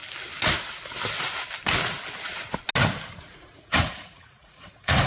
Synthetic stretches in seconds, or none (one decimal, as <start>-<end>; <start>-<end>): 3.1-5.1